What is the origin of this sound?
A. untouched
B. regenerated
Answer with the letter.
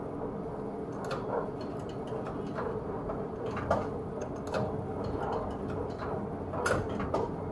A